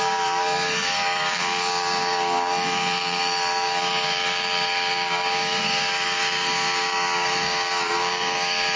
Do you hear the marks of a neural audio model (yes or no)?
yes